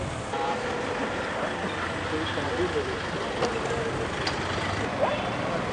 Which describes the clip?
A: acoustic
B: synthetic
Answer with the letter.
A